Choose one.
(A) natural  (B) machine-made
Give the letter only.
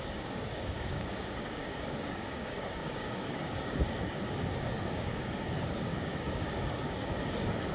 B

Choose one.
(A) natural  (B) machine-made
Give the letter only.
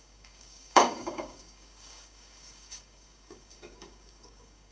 B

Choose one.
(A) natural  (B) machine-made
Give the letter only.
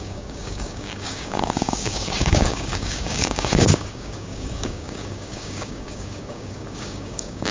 B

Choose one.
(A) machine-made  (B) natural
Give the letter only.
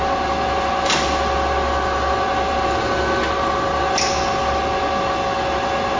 B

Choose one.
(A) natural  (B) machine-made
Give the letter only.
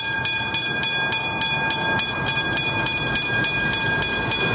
A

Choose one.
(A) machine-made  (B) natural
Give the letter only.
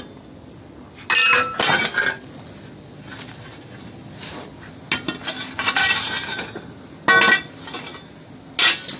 B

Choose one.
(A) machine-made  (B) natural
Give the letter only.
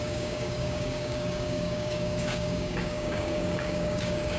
A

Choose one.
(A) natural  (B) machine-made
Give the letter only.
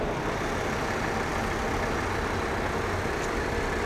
A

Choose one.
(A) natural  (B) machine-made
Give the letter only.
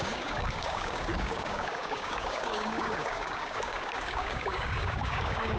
B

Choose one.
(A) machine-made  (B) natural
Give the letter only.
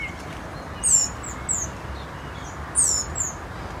B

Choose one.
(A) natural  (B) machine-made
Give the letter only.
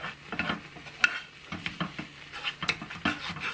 A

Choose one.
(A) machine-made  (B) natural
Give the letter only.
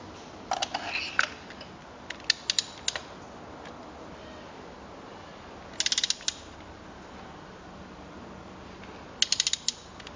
B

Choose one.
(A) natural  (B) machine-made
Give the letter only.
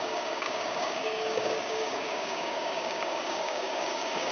B